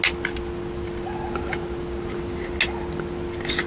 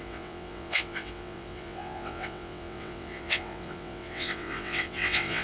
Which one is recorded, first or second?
first